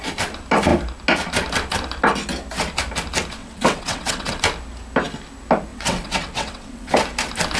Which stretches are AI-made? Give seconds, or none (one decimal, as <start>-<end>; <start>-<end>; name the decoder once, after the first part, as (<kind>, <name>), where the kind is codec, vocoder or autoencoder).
3.4-4.4 (vocoder, WaveNeXt); 5.7-6.9